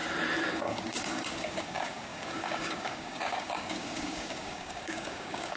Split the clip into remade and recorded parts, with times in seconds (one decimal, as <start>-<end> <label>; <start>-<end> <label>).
0.0-0.5 recorded; 0.5-5.6 remade

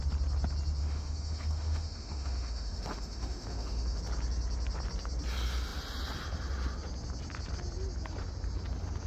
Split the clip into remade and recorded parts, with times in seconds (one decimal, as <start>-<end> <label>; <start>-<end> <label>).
0.0-0.8 recorded; 0.8-4.0 remade; 4.0-9.1 recorded

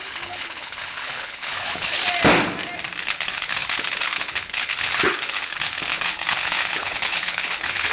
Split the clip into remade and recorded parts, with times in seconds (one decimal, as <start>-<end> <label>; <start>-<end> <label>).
0.0-2.0 remade; 2.0-3.0 recorded; 3.0-7.9 remade